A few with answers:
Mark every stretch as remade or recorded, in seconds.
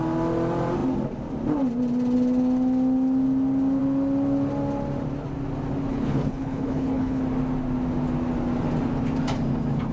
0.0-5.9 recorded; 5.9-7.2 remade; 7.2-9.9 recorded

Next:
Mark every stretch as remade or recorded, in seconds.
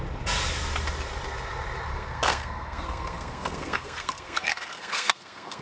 0.0-1.9 recorded; 1.9-5.6 remade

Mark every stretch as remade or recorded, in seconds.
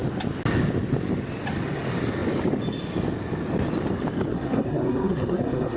0.0-4.3 recorded; 4.3-5.8 remade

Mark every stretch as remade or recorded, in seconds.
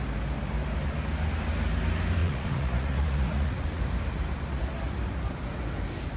0.0-2.2 recorded; 2.2-3.8 remade; 3.8-6.2 recorded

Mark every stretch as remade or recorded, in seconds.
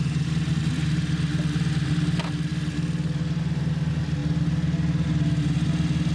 0.0-6.1 recorded